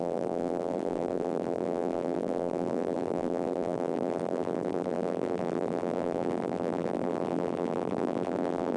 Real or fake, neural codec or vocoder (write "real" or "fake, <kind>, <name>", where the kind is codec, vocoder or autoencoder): fake, vocoder, BigVGAN v2